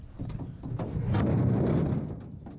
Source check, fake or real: real